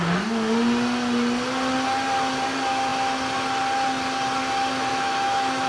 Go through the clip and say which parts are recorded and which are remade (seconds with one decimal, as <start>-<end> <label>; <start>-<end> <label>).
0.0-4.9 recorded; 4.9-5.7 remade